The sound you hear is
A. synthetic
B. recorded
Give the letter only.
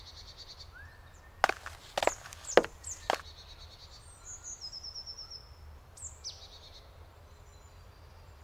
B